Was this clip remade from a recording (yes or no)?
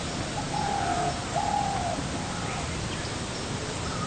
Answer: no